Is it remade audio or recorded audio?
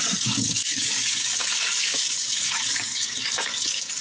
remade